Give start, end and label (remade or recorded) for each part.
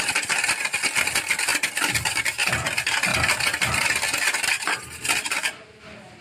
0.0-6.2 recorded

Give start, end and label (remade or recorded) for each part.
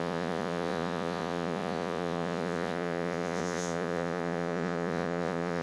0.0-5.6 remade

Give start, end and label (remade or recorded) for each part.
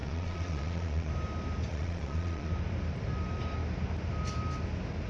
0.0-1.1 remade; 1.1-1.7 recorded; 1.7-2.5 remade; 2.5-5.1 recorded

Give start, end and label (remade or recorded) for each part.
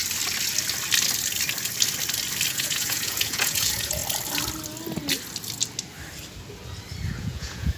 0.0-2.5 recorded; 2.5-4.0 remade; 4.0-7.2 recorded; 7.2-7.8 remade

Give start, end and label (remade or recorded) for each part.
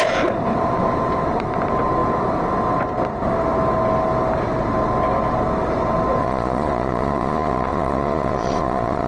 0.0-6.2 recorded; 6.2-9.1 remade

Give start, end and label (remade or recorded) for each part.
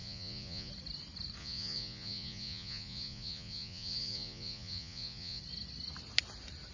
0.0-0.7 remade; 0.7-1.4 recorded; 1.4-5.4 remade; 5.4-6.7 recorded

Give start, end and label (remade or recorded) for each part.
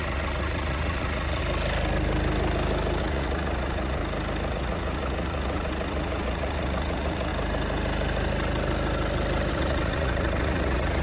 0.0-1.4 remade; 1.4-3.0 recorded; 3.0-4.0 remade; 4.0-4.5 recorded; 4.5-7.3 remade; 7.3-9.5 recorded; 9.5-11.0 remade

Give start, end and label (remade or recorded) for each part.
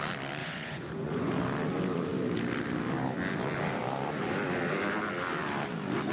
0.0-0.4 recorded; 0.4-1.3 remade; 1.3-6.1 recorded